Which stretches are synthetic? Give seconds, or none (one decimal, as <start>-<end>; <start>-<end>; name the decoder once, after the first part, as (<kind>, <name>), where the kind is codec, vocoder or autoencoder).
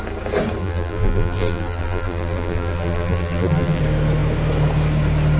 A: 0.6-3.8 (vocoder, BigVGAN v2)